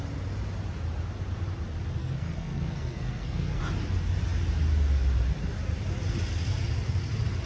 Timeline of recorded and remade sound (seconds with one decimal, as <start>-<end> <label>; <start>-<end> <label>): 0.0-2.0 recorded; 2.0-3.6 remade; 3.6-7.5 recorded